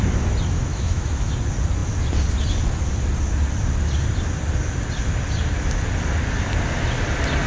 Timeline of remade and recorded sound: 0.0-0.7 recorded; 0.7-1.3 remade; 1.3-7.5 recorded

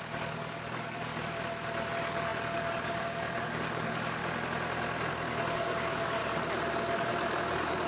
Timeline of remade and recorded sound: 0.0-1.1 remade; 1.1-1.9 recorded; 1.9-4.2 remade; 4.2-5.1 recorded; 5.1-6.2 remade; 6.2-6.7 recorded; 6.7-7.9 remade

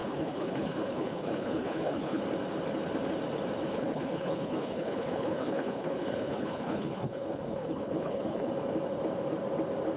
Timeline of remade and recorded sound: 0.0-2.2 remade; 2.2-3.7 recorded; 3.7-8.5 remade; 8.5-10.0 recorded

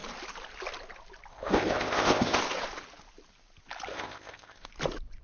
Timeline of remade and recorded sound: 0.0-1.3 recorded; 1.3-2.4 remade; 2.4-3.9 recorded; 3.9-4.7 remade; 4.7-5.2 recorded

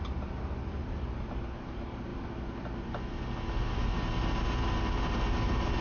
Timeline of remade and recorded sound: 0.0-2.1 remade; 2.1-2.8 recorded; 2.8-5.8 remade